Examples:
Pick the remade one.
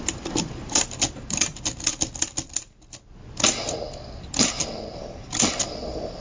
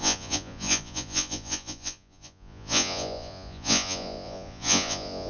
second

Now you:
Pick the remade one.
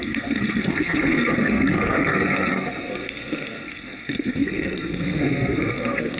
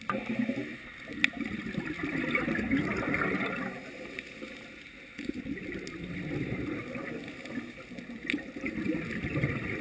first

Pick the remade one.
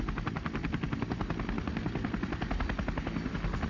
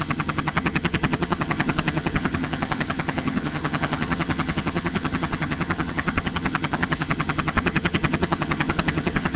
second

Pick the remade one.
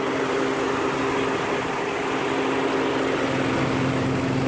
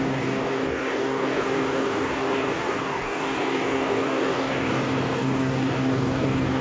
second